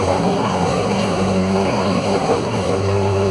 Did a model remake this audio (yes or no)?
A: yes